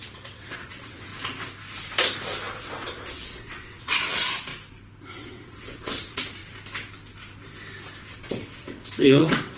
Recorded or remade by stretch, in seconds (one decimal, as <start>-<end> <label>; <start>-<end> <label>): 0.0-1.1 remade; 1.1-2.6 recorded; 2.6-4.5 remade; 4.5-5.1 recorded; 5.1-6.4 remade; 6.4-8.0 recorded; 8.0-9.6 remade